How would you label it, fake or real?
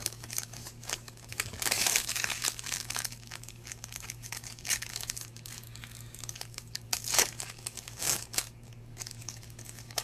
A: fake